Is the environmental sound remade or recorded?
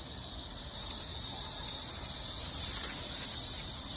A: recorded